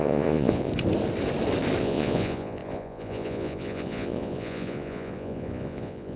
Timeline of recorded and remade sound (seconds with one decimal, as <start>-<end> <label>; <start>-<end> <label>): 0.0-0.7 remade; 0.7-1.8 recorded; 1.8-6.2 remade